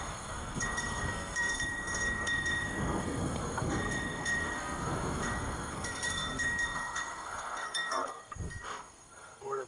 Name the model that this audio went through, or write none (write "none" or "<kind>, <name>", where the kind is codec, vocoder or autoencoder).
codec, SNAC